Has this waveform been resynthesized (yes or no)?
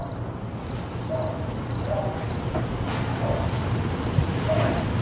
no